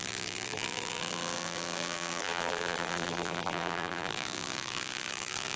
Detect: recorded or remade remade